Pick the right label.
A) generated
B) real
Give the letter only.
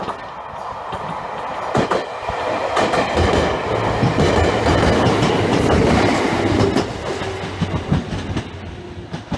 B